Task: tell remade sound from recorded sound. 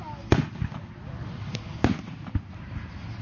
recorded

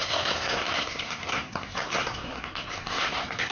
remade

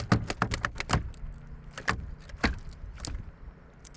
recorded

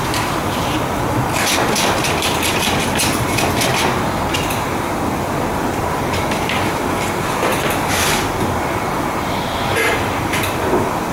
recorded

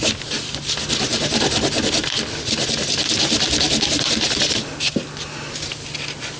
recorded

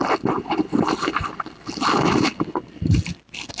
recorded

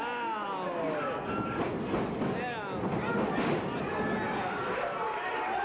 recorded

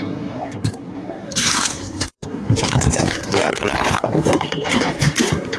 remade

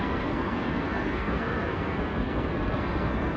remade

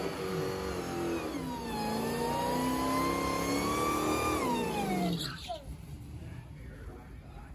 recorded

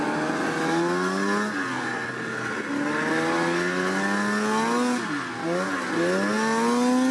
recorded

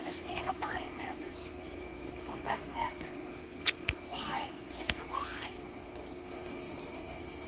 remade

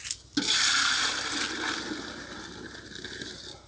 recorded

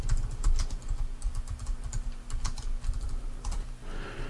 recorded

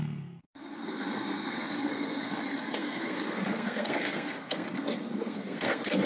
remade